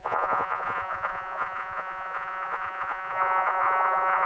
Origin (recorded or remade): remade